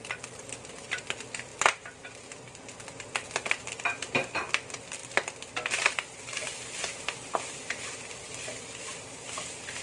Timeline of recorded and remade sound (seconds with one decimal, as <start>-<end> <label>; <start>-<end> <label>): 0.0-1.5 recorded; 1.5-2.3 remade; 2.3-5.0 recorded; 5.0-9.8 remade